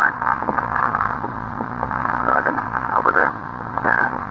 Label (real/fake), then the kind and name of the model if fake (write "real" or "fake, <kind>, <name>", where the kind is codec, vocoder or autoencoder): fake, vocoder, Vocos